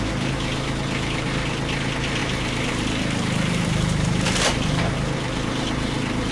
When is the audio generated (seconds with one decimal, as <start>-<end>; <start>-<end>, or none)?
2.2-6.3